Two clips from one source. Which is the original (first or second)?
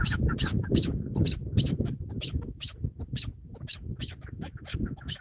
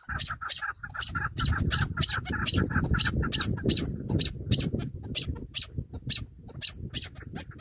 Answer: second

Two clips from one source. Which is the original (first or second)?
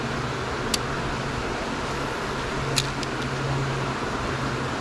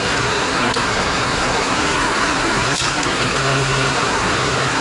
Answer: first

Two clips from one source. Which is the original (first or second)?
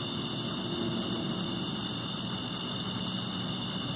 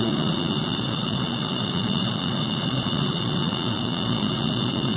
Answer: first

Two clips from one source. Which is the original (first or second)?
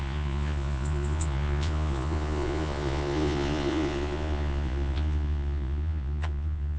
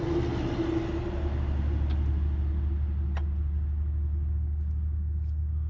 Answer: second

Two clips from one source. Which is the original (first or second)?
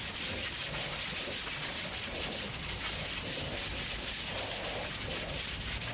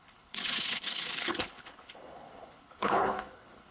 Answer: first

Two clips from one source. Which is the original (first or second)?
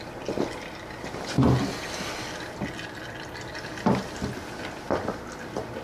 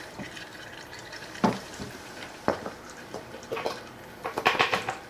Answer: first